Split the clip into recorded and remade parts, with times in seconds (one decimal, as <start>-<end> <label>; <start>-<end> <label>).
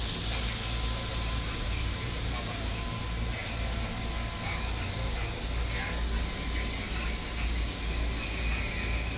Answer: 0.0-1.1 recorded; 1.1-3.0 remade; 3.0-9.2 recorded